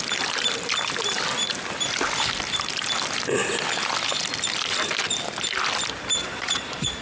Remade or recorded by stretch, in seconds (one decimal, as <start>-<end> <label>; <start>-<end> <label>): 0.0-6.2 recorded; 6.2-7.0 remade